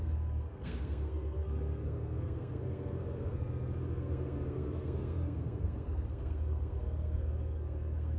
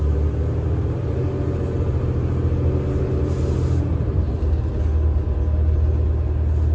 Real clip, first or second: second